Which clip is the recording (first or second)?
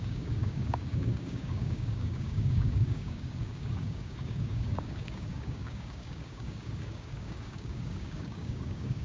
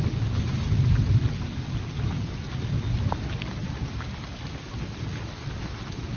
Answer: second